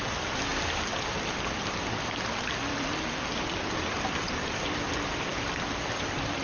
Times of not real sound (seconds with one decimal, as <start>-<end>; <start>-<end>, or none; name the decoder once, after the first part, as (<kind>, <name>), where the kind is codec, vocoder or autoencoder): 0.0-0.5 (vocoder, BigVGAN v2); 1.5-2.7; 4.3-6.4